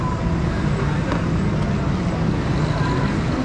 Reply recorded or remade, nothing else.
recorded